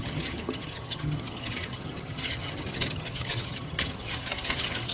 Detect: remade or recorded remade